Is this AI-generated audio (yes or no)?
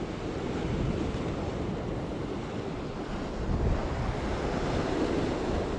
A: no